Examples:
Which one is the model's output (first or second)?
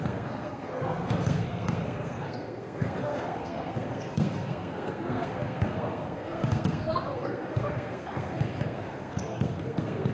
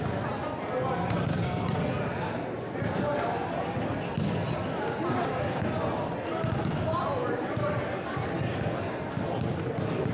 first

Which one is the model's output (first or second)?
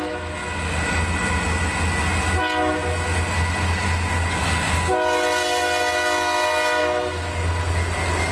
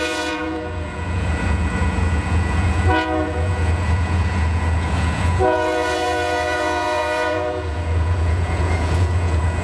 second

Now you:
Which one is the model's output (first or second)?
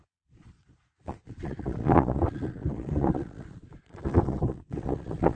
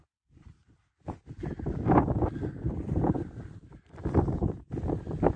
first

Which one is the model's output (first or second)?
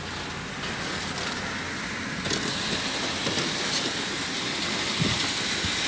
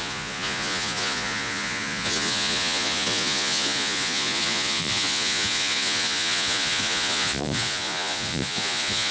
second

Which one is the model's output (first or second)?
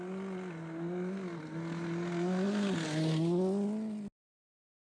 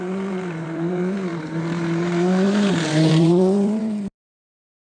second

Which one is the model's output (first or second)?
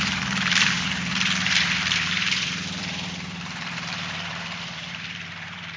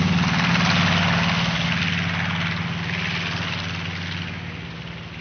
first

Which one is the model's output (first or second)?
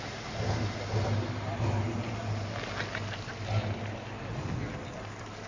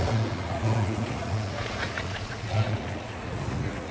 second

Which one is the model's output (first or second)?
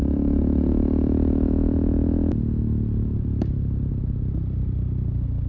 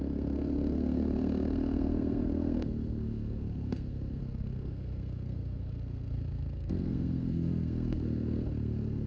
second